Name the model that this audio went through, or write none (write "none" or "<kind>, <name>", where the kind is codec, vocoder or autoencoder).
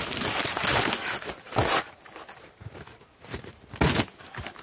none